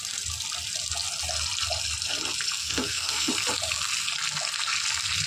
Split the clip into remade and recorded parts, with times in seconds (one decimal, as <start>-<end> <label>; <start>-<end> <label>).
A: 0.0-2.6 recorded; 2.6-3.3 remade; 3.3-5.3 recorded